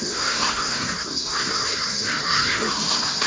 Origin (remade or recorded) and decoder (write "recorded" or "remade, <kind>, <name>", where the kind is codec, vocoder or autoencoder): remade, codec, SNAC